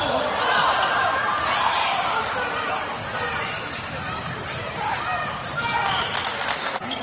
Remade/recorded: remade